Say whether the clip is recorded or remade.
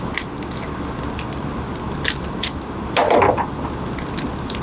recorded